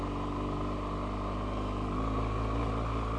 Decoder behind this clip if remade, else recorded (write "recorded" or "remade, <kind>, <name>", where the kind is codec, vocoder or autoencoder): recorded